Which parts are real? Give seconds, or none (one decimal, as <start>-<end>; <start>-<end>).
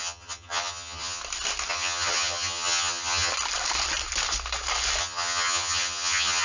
1.2-1.7; 3.3-5.0